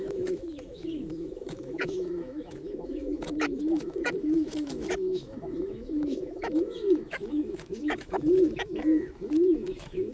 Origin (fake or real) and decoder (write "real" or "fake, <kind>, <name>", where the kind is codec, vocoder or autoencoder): fake, autoencoder, DAC-VAE